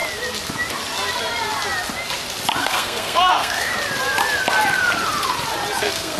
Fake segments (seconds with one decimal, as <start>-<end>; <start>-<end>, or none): 2.6-3.7; 5.8-6.2